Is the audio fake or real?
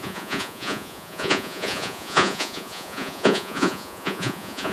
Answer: fake